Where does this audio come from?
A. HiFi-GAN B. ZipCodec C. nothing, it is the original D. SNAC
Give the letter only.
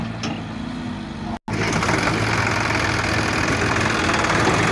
C